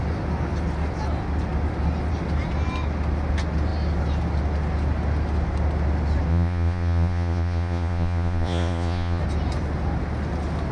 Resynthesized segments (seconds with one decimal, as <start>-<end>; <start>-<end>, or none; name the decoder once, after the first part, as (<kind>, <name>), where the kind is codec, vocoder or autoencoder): 6.3-9.2 (vocoder, Vocos)